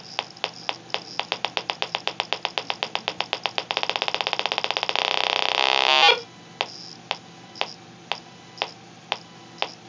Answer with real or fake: real